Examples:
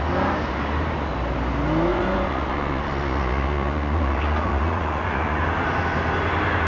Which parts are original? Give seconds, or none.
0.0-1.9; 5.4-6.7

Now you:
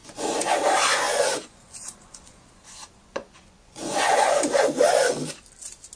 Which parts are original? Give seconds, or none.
0.5-0.9; 4.4-5.9

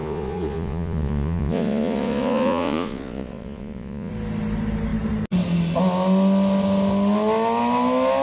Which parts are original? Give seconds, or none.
4.1-8.2

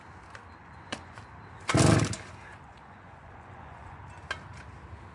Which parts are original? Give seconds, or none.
0.0-0.6; 1.2-2.5; 4.0-5.1

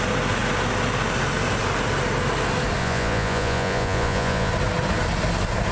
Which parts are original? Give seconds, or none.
0.0-2.8; 4.5-5.7

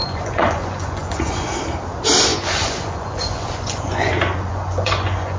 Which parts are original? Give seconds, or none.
1.5-2.3; 4.1-4.5